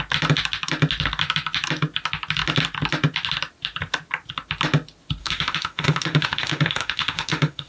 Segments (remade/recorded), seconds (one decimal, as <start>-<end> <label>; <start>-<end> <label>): 0.0-5.2 recorded; 5.2-7.7 remade